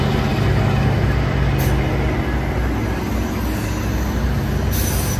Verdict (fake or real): real